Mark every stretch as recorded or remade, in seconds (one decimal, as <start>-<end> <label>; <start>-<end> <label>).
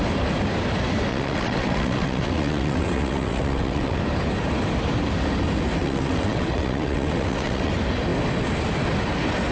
0.0-1.1 recorded; 1.1-4.0 remade; 4.0-5.8 recorded; 5.8-7.7 remade; 7.7-9.5 recorded